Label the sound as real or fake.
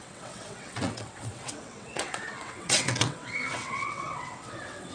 fake